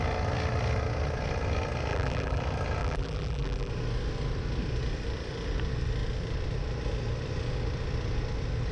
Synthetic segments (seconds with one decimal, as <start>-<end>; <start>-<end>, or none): 1.9-2.4; 2.8-3.7